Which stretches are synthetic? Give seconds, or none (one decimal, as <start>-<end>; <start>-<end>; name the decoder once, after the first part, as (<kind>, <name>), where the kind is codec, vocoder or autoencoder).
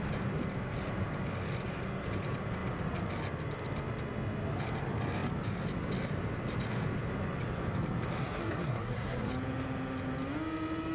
8.2-9.3 (codec, SNAC)